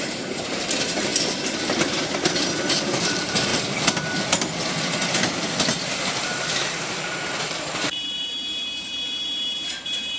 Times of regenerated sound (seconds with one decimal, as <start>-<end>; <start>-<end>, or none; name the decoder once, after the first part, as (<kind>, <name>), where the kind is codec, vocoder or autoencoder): 0.0-1.1 (vocoder, BigVGAN v2); 2.8-3.5; 7.4-10.2